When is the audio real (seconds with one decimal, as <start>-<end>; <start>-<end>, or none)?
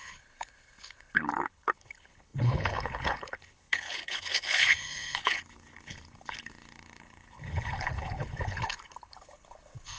none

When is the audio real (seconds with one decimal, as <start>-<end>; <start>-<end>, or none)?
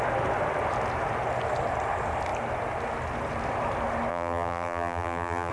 0.0-4.1